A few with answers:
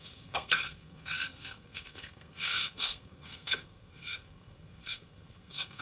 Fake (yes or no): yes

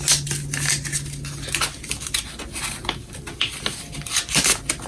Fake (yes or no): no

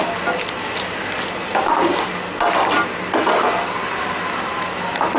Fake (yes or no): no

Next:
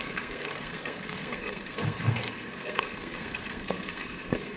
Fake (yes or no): yes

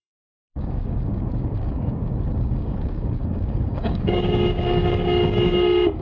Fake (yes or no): yes